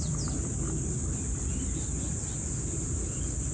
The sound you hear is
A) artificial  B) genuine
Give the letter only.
B